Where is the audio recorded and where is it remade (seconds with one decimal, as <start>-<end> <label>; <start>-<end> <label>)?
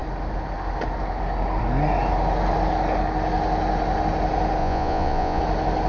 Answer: 0.0-4.6 recorded; 4.6-5.4 remade; 5.4-5.9 recorded